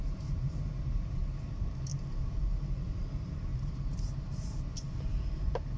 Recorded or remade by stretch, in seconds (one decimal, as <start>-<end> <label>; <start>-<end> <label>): 0.0-0.8 remade; 0.8-1.9 recorded; 1.9-2.6 remade; 2.6-3.5 recorded; 3.5-4.6 remade; 4.6-5.8 recorded